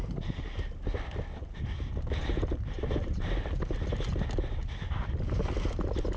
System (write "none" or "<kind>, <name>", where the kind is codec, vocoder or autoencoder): none